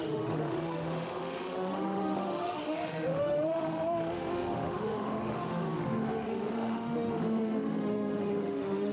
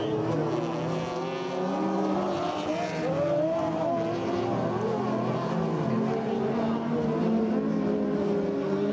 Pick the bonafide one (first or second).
second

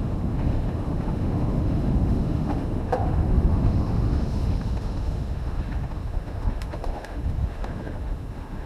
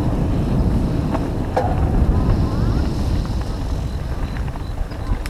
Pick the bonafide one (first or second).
second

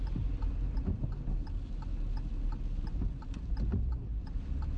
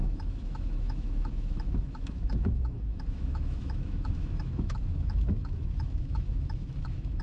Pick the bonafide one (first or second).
first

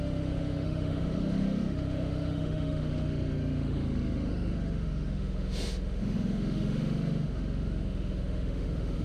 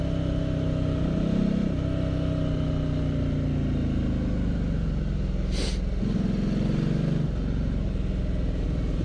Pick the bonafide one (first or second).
second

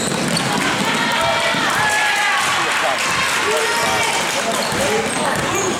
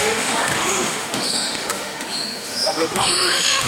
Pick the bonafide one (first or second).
first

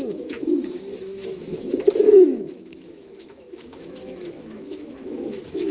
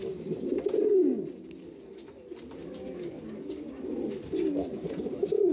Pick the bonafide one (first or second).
second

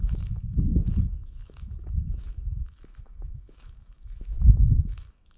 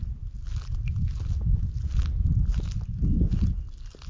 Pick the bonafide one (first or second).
second